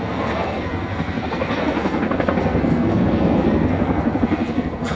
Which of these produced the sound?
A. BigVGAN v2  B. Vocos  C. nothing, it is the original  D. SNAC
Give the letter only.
D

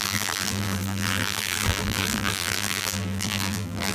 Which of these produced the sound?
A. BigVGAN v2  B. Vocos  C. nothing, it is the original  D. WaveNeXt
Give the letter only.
A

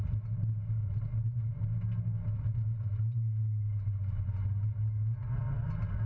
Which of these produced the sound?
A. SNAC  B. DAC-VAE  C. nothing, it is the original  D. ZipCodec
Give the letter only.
C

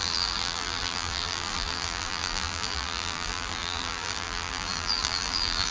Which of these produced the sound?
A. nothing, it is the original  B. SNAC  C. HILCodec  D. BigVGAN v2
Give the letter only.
D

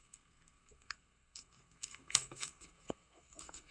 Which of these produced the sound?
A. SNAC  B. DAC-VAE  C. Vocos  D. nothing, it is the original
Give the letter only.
A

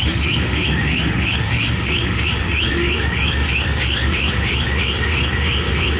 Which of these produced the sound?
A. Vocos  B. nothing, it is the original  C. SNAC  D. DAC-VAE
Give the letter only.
D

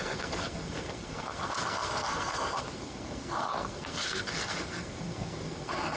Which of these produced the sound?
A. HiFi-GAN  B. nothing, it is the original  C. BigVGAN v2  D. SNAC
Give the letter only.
D